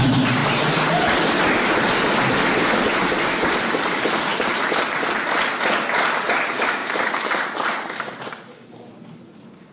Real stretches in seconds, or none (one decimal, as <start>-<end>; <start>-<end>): 0.0-4.3; 5.1-6.8; 9.2-9.7